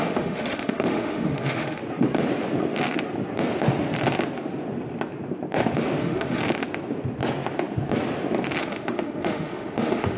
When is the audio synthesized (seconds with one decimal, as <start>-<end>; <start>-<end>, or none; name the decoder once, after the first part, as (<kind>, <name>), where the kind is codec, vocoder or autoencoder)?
0.0-1.8 (autoencoder, DAC-VAE); 6.0-6.4; 8.6-10.2